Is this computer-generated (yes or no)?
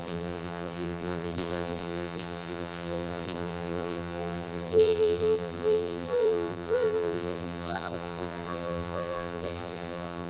yes